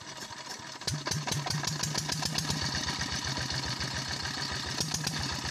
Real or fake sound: real